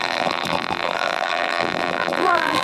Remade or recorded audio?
remade